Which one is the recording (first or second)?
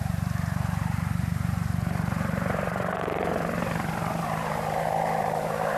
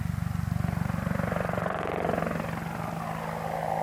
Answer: second